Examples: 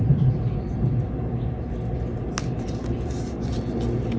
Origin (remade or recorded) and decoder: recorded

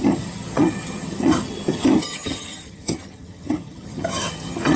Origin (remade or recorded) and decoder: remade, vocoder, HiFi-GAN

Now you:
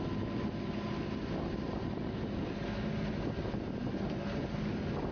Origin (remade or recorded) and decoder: recorded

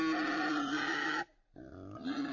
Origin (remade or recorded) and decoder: recorded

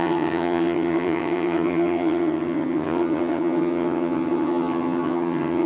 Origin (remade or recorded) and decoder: remade, vocoder, HiFi-GAN